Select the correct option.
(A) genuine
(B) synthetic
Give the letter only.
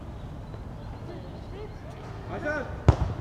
A